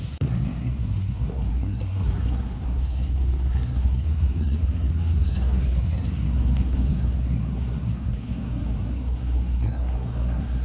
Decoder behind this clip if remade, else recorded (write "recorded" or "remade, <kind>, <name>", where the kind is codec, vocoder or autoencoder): remade, codec, SNAC